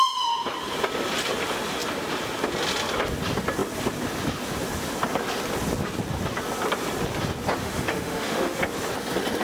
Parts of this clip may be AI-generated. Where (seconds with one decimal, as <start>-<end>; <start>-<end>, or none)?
7.6-8.6